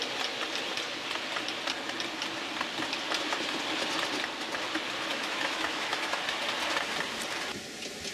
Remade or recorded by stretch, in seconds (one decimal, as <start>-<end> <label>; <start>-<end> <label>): 0.0-5.1 recorded; 5.1-6.2 remade; 6.2-8.1 recorded